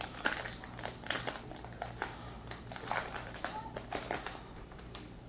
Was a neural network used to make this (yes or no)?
yes